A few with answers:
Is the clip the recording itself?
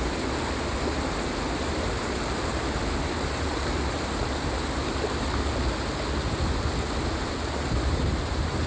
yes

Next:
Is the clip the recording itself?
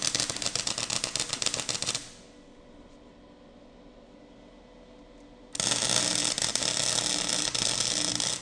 yes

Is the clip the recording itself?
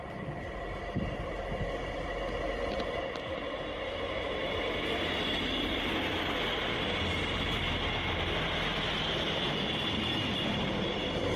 yes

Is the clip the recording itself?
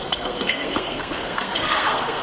no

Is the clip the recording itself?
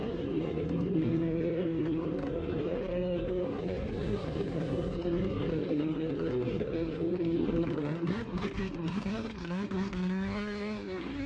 no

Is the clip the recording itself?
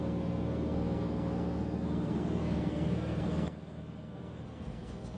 no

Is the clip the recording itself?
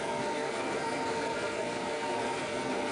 no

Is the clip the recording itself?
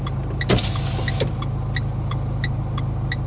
yes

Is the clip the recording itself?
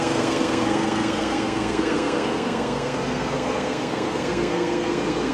no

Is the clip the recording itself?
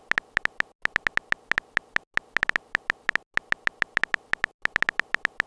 yes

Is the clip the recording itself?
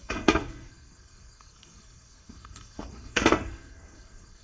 no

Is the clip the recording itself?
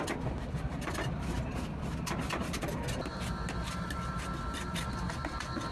yes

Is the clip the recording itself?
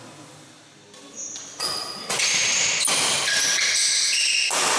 yes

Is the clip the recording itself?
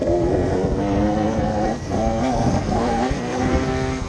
no